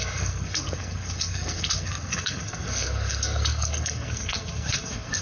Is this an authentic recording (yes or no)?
no